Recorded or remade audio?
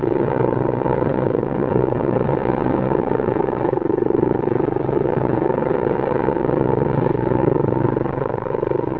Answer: remade